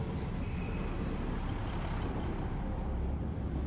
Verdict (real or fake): real